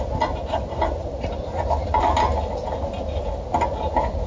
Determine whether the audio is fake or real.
real